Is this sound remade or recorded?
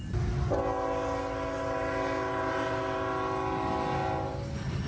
recorded